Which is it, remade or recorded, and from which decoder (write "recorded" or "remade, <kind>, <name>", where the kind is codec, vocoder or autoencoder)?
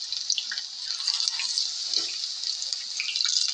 recorded